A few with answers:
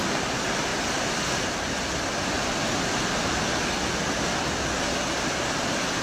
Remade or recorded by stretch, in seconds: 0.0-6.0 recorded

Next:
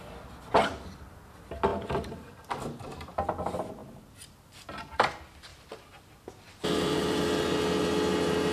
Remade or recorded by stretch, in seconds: 0.0-1.7 recorded; 1.7-2.5 remade; 2.5-5.5 recorded; 5.5-7.4 remade; 7.4-8.5 recorded

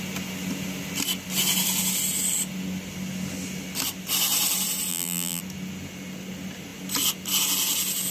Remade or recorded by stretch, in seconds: 0.0-4.9 recorded; 4.9-5.4 remade; 5.4-8.1 recorded